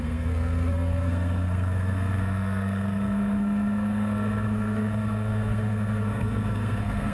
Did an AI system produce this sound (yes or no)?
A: yes